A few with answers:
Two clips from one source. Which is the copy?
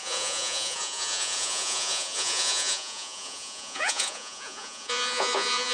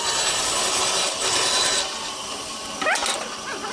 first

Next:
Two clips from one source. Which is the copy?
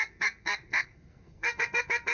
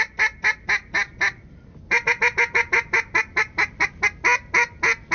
first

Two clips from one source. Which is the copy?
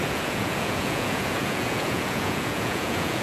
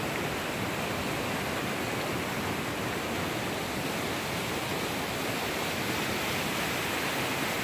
first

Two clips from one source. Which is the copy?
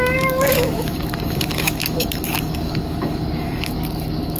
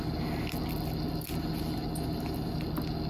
first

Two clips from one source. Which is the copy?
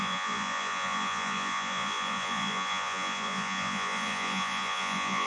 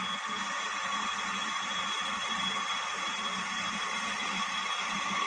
first